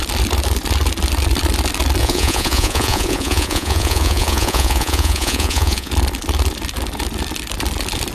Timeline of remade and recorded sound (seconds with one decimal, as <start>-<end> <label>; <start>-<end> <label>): 0.0-2.0 recorded; 2.0-5.9 remade; 5.9-8.1 recorded

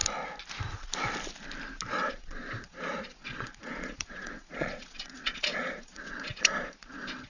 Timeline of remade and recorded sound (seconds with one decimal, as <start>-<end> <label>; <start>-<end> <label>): 0.0-2.1 recorded; 2.1-7.3 remade

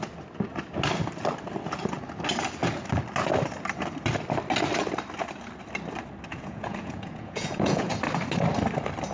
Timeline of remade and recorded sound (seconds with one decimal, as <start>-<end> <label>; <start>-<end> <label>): 0.0-6.3 recorded; 6.3-7.9 remade; 7.9-9.1 recorded

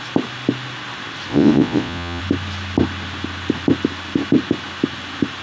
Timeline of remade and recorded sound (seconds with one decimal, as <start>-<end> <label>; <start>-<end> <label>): 0.0-1.3 recorded; 1.3-2.2 remade; 2.2-5.4 recorded

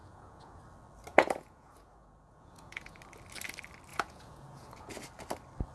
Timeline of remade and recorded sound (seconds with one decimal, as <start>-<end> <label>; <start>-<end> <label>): 0.0-0.6 remade; 0.6-1.1 recorded; 1.1-3.0 remade; 3.0-3.9 recorded; 3.9-4.9 remade; 4.9-5.7 recorded

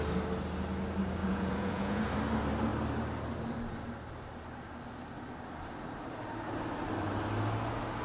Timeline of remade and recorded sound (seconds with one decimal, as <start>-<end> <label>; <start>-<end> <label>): 0.0-1.2 recorded; 1.2-2.0 remade; 2.0-8.0 recorded

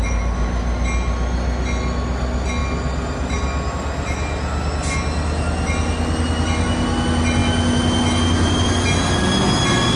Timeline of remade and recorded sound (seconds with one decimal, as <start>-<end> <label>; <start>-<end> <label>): 0.0-10.0 recorded